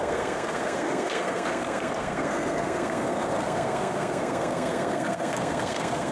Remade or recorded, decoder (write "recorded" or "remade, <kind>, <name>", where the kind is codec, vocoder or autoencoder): remade, codec, SNAC